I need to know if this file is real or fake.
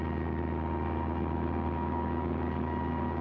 real